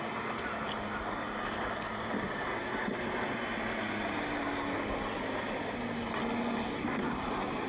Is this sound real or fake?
real